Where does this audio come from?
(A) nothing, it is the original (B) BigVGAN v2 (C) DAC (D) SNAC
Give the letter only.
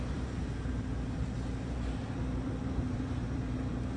B